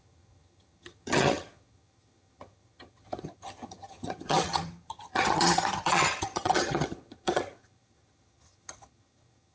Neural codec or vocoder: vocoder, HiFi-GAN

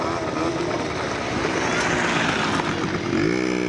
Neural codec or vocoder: none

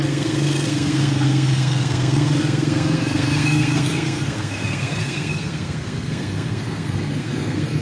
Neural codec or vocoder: codec, SNAC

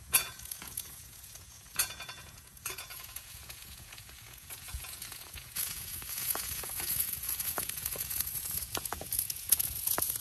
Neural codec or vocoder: vocoder, Vocos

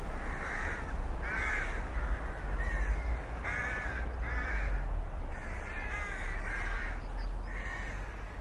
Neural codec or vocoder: none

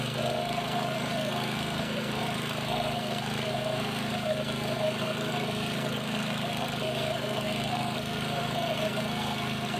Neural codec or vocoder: codec, SNAC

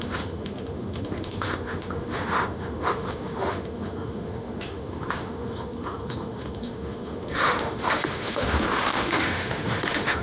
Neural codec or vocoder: autoencoder, DAC-VAE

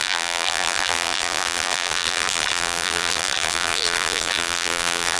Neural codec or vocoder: vocoder, BigVGAN v2